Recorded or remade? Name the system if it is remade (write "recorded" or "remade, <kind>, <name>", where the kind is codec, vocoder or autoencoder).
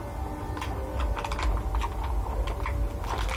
recorded